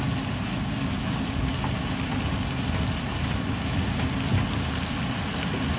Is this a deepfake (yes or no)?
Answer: no